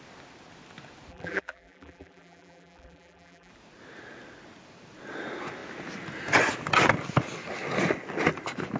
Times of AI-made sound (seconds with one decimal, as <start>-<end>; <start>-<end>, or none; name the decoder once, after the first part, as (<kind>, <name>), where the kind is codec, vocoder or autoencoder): 1.1-3.5 (vocoder, BigVGAN v2)